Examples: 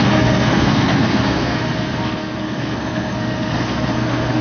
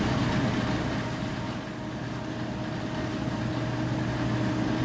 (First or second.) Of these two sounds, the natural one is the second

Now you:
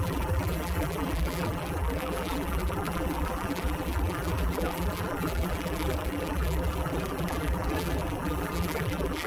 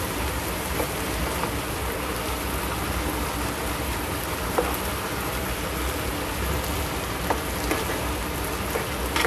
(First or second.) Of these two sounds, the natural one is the second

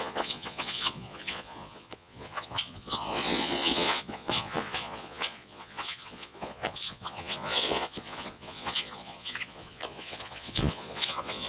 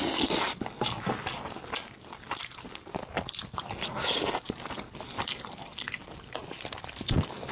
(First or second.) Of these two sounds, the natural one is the second